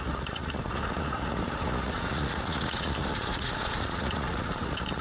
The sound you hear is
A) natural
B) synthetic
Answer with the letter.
B